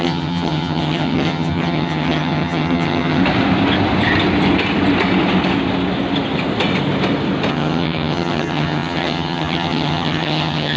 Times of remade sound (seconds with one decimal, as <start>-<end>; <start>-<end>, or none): 0.0-3.2; 7.5-10.8